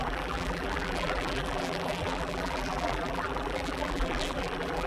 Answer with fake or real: fake